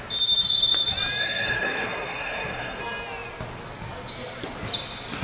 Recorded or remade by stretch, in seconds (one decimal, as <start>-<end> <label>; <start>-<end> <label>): 0.0-1.2 recorded; 1.2-2.8 remade; 2.8-5.2 recorded